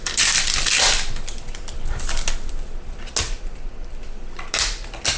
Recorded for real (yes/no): yes